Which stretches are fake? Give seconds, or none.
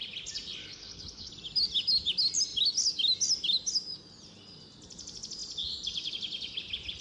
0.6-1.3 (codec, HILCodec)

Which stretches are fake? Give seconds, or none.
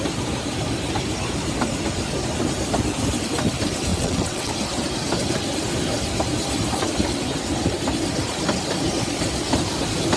3.9-4.5 (vocoder, WaveNeXt)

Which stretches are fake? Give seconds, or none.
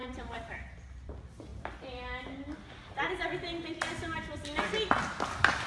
0.0-1.1 (vocoder, BigVGAN v2); 1.5-2.2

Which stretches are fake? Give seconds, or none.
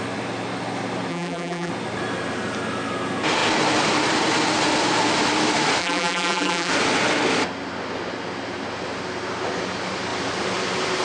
1.1-1.7 (vocoder, BigVGAN v2); 5.8-6.7